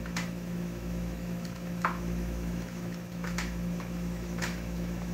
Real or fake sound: fake